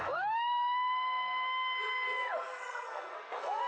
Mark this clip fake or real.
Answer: fake